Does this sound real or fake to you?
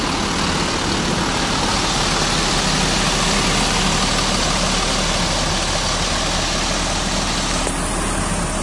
real